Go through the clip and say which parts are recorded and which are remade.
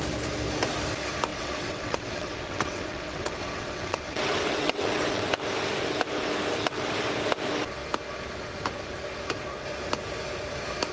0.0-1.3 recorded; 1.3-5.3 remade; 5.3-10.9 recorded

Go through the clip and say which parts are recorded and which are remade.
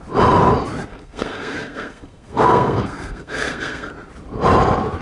0.0-0.9 recorded; 0.9-3.9 remade; 3.9-5.0 recorded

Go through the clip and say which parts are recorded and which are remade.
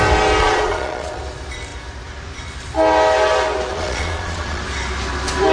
0.0-0.4 recorded; 0.4-1.2 remade; 1.2-3.7 recorded; 3.7-4.6 remade; 4.6-5.5 recorded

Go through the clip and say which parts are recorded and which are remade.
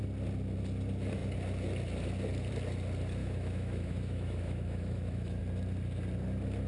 0.0-3.2 recorded; 3.2-5.4 remade; 5.4-6.7 recorded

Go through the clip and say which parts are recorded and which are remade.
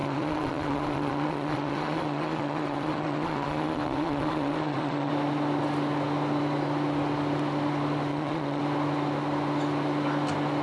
0.0-5.1 remade; 5.1-8.1 recorded; 8.1-8.6 remade; 8.6-10.6 recorded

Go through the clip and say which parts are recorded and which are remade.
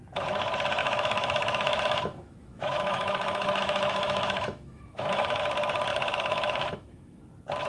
0.0-0.8 recorded; 0.8-5.4 remade; 5.4-5.9 recorded; 5.9-7.2 remade; 7.2-7.7 recorded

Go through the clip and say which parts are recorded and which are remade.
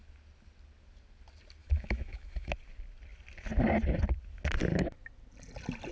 0.0-1.6 recorded; 1.6-2.5 remade; 2.5-5.9 recorded